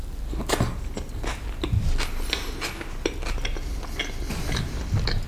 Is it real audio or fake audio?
real